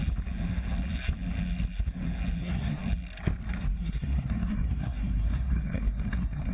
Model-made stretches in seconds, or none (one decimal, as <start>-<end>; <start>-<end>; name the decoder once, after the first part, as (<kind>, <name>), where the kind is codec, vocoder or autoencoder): 2.4-2.8 (codec, SNAC); 3.6-6.5